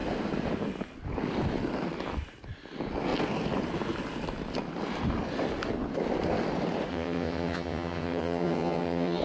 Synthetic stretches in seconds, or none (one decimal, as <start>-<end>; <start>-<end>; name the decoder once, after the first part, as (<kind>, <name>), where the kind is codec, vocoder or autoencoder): 6.9-9.2 (vocoder, HiFi-GAN)